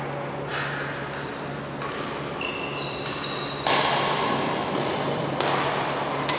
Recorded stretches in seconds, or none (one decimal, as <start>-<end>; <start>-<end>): 0.0-6.4